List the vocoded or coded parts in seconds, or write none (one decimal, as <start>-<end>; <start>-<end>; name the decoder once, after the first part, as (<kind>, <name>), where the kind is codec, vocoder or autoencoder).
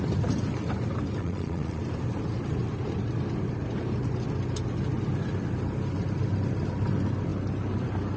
1.2-1.8 (vocoder, Vocos)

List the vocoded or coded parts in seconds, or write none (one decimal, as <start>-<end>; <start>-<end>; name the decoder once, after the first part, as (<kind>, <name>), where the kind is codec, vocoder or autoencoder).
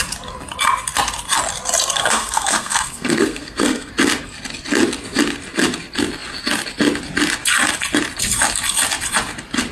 2.0-3.9 (codec, SNAC)